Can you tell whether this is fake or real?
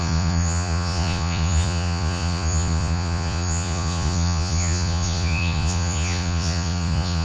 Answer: fake